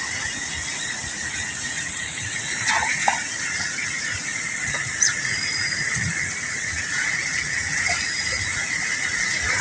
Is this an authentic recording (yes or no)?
no